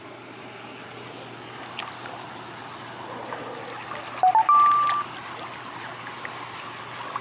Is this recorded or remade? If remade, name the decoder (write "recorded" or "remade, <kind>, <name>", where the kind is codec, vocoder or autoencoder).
recorded